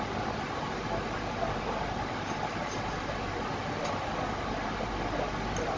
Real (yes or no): yes